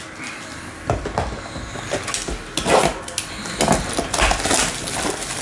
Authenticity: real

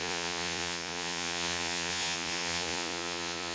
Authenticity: fake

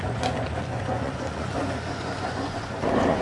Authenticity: fake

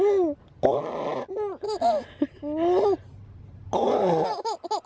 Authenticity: real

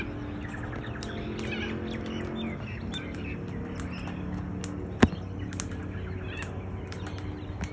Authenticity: real